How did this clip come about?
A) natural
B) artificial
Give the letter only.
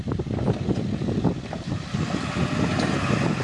A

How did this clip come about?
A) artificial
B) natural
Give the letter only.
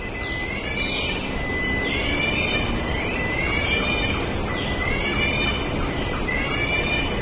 B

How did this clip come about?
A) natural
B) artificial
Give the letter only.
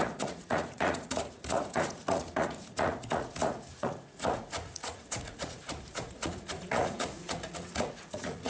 B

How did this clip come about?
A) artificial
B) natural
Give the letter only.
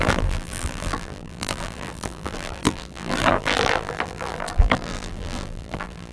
A